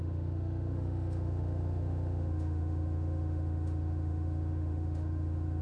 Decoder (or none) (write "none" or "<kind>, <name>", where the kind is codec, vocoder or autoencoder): autoencoder, DAC-VAE